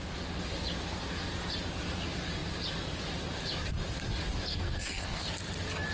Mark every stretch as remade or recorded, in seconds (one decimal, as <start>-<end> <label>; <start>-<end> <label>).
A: 0.0-4.5 recorded; 4.5-5.3 remade; 5.3-5.9 recorded